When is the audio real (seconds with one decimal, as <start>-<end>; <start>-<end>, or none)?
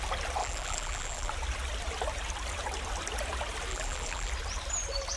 0.0-0.4; 1.3-3.7; 4.3-5.2